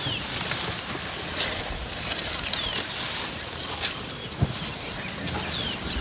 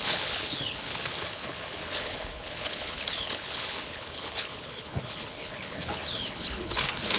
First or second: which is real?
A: first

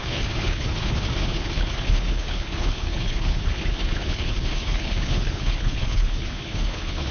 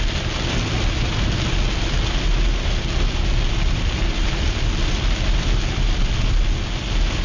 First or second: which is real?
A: second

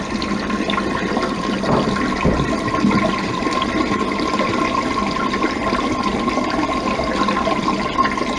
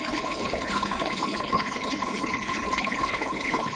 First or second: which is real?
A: first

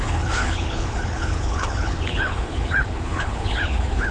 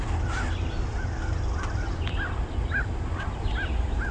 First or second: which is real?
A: second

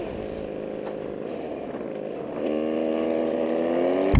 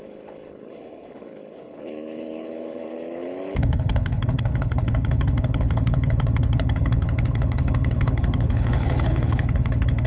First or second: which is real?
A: first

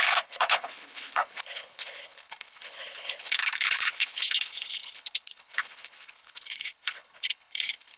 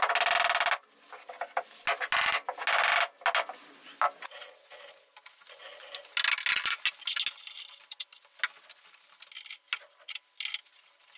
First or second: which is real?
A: second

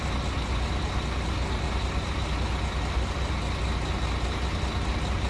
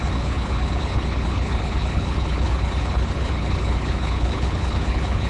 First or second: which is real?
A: first